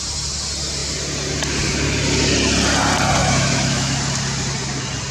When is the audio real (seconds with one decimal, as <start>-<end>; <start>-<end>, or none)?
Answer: 0.0-3.2; 4.0-5.1